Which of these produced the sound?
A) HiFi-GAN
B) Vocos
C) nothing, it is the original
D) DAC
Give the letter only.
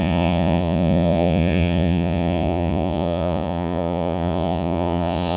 B